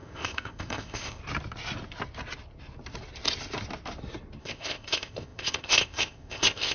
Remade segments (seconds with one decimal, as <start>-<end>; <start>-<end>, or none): 0.0-1.2; 4.4-6.7